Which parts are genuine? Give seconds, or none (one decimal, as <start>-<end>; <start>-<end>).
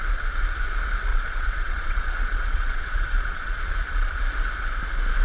0.0-1.1; 4.2-5.2